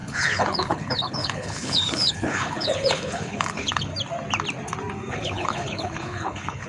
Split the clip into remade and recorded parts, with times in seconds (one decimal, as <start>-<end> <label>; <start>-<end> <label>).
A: 0.0-3.9 remade; 3.9-5.1 recorded; 5.1-6.7 remade